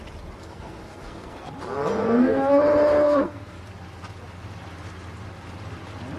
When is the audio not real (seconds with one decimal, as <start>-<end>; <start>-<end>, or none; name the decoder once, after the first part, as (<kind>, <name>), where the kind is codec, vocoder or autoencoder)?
0.4-1.5 (codec, SNAC); 2.0-2.5; 2.9-3.6